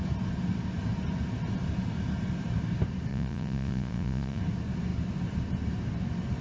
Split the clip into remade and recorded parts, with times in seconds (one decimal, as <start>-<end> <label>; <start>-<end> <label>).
0.0-3.1 recorded; 3.1-4.4 remade; 4.4-6.4 recorded